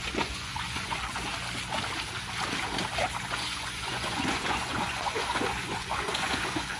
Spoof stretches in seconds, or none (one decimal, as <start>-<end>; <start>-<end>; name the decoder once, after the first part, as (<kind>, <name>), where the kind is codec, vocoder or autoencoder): 0.0-1.3 (vocoder, Vocos); 3.2-6.8